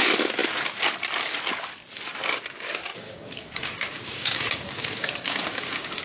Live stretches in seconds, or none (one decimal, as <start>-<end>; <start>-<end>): 0.0-2.9